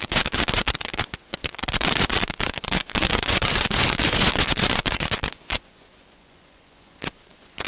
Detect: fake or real fake